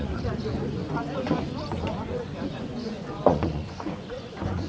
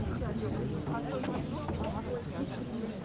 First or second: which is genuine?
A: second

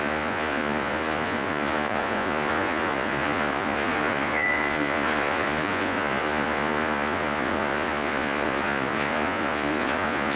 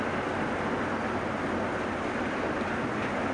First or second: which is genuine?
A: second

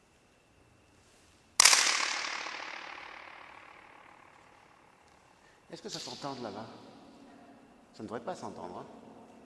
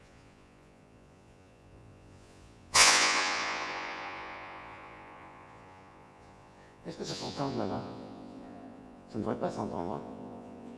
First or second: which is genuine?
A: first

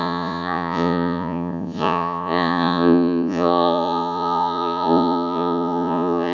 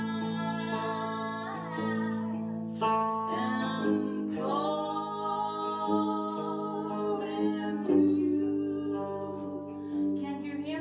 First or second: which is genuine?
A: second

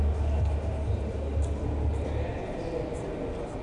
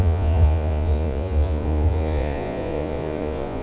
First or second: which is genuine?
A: first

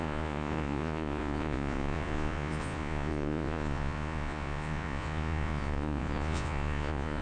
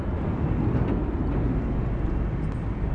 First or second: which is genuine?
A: second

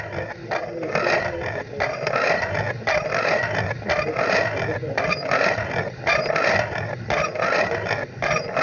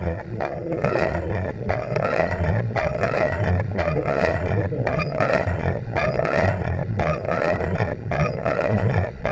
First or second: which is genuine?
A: first